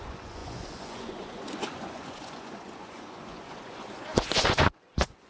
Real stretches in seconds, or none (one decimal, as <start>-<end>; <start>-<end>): none